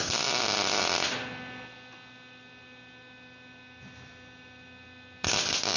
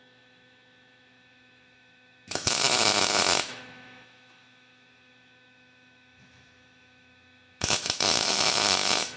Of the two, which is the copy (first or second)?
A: second